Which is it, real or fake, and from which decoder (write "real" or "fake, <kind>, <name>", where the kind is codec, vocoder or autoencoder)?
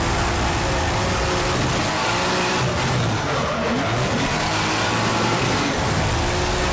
real